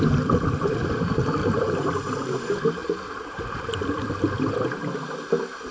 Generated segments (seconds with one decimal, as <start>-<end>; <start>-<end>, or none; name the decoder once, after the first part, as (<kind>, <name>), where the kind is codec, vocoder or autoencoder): 0.0-1.4 (vocoder, BigVGAN v2); 2.1-5.7